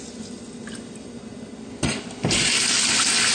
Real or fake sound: real